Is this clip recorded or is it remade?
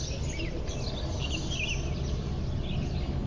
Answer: recorded